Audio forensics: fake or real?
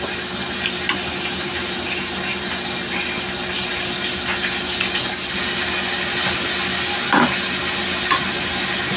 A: real